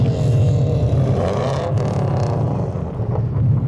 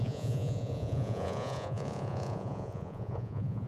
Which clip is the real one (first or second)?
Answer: first